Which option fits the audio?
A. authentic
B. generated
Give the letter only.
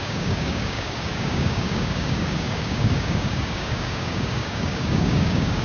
B